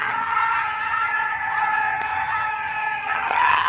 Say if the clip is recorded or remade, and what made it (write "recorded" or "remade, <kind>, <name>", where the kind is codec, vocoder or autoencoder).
remade, vocoder, HiFi-GAN